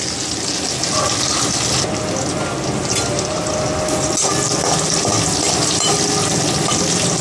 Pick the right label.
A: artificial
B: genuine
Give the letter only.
B